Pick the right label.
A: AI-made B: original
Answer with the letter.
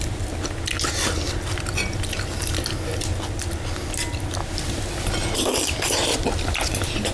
B